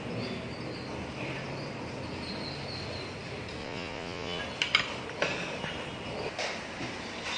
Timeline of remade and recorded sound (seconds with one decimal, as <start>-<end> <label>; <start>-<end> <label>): 0.0-3.6 recorded; 3.6-4.4 remade; 4.4-7.4 recorded